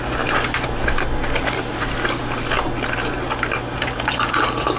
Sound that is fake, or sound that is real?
real